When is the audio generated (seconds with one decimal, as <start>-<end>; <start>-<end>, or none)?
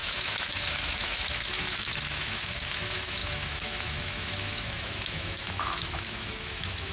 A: 0.0-6.9